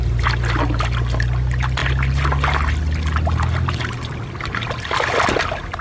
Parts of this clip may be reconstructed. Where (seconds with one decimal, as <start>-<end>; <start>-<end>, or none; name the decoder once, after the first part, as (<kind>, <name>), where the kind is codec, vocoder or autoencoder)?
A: none